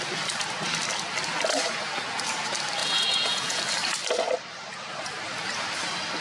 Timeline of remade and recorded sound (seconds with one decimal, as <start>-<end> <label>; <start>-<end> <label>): 0.0-2.8 recorded; 2.8-3.6 remade; 3.6-6.2 recorded